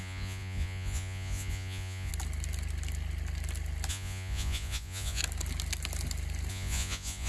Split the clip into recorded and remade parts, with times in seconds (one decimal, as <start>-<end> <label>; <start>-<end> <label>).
0.0-2.1 remade; 2.1-3.9 recorded; 3.9-5.2 remade; 5.2-6.5 recorded; 6.5-7.3 remade